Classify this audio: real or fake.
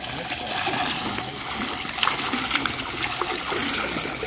real